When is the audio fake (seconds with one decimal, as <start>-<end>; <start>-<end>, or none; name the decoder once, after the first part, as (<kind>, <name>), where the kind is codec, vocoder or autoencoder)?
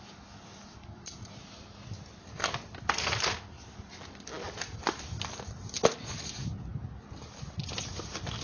none